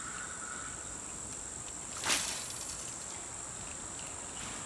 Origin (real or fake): real